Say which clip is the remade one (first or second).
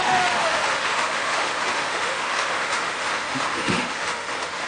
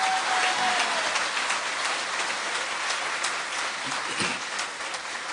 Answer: first